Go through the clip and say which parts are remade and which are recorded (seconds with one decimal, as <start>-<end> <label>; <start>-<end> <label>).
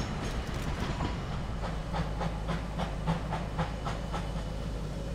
0.0-5.1 recorded